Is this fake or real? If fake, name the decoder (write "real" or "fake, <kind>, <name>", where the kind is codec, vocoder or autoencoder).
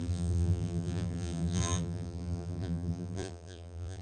fake, vocoder, BigVGAN v2